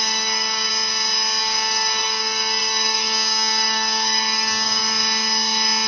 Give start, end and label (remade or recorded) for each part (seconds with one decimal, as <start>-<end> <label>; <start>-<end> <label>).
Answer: 0.0-0.7 remade; 0.7-1.4 recorded; 1.4-4.8 remade; 4.8-5.9 recorded